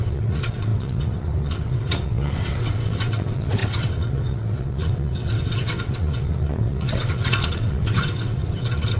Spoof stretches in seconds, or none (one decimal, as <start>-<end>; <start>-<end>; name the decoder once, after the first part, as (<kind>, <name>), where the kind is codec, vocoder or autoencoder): 0.0-9.0 (vocoder, WaveNeXt)